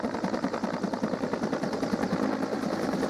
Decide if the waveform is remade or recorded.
recorded